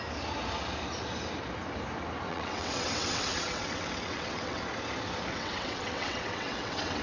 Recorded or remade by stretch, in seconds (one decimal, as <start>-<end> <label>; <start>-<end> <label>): 0.0-2.3 recorded; 2.3-4.6 remade; 4.6-5.3 recorded; 5.3-7.0 remade